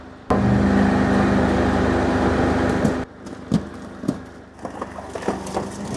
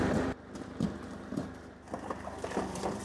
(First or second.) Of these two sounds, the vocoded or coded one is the second